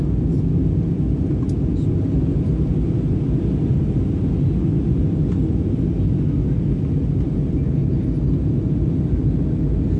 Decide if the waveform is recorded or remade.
recorded